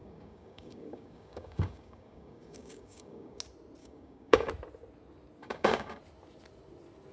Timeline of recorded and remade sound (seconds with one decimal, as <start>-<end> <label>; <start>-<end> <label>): 0.0-3.4 remade; 3.4-3.8 recorded; 3.8-4.5 remade; 4.5-5.4 recorded; 5.4-6.0 remade; 6.0-7.1 recorded